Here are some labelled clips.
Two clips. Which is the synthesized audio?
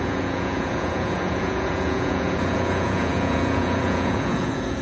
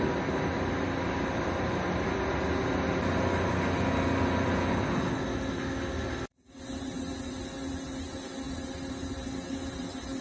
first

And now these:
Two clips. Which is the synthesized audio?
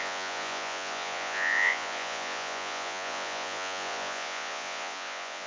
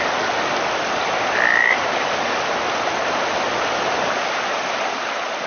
first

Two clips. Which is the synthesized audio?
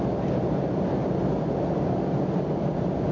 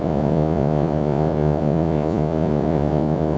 second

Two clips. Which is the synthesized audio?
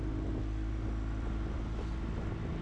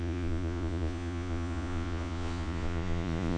second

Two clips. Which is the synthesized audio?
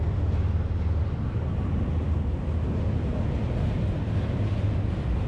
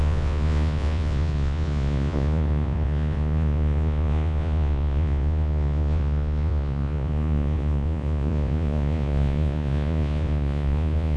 second